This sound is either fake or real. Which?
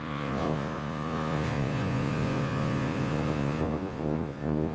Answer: fake